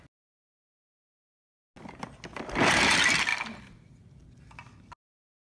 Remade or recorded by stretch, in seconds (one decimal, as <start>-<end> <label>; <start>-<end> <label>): 0.0-3.3 recorded; 3.3-4.4 remade; 4.4-5.6 recorded